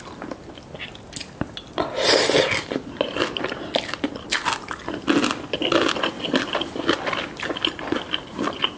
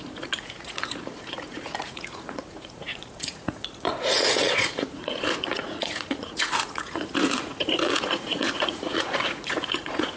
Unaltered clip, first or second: first